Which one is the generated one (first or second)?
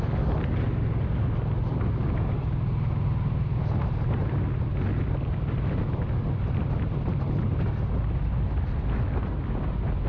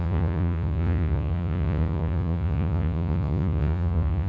second